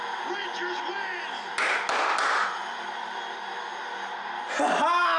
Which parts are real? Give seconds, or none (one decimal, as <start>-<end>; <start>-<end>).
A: 0.0-5.2